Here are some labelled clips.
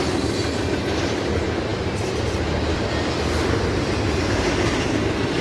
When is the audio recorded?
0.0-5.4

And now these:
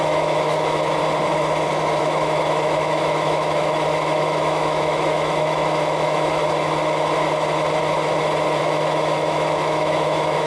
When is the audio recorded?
1.0-2.0; 6.4-8.6

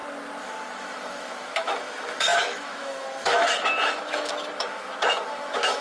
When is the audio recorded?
0.0-0.8